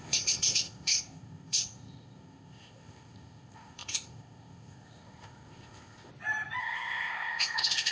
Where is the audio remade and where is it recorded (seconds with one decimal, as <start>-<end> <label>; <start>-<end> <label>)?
0.0-6.1 remade; 6.1-6.6 recorded; 6.6-7.9 remade